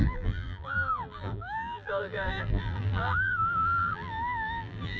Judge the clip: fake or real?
fake